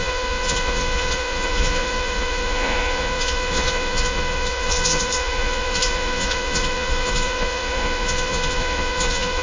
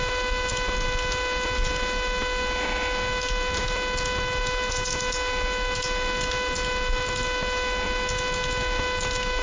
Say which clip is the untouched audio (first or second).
second